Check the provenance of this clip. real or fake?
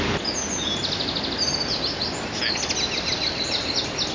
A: real